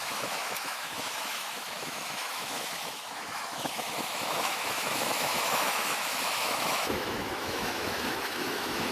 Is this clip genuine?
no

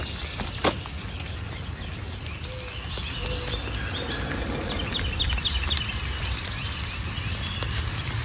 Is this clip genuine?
yes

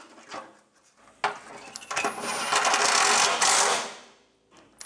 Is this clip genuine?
yes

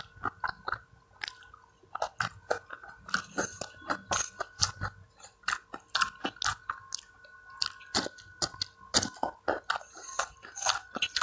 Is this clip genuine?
yes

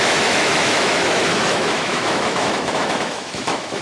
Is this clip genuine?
no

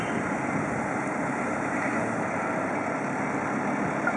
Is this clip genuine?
yes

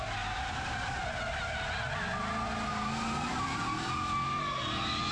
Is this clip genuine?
yes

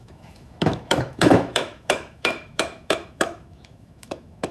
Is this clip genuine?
no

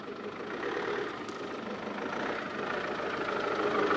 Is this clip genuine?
yes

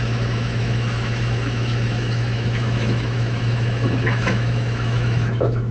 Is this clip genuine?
no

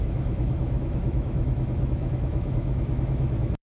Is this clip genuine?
no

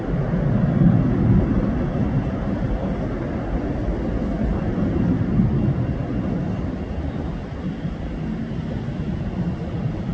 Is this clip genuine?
yes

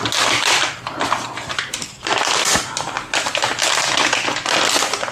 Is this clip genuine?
yes